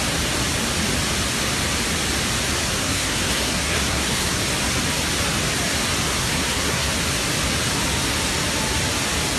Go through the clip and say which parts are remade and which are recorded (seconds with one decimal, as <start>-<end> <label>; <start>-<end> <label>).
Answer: 0.0-2.8 recorded; 2.8-4.4 remade; 4.4-6.2 recorded; 6.2-6.9 remade; 6.9-9.4 recorded